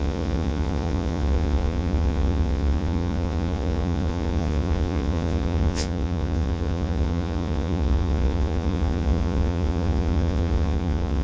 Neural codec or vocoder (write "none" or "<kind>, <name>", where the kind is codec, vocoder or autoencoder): vocoder, Vocos